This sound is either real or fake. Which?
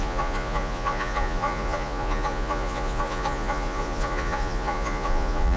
fake